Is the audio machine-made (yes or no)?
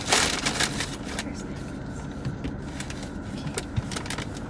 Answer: yes